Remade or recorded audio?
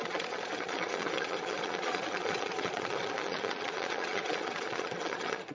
remade